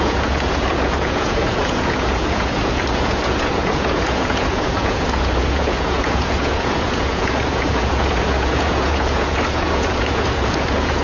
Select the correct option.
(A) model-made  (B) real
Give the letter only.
A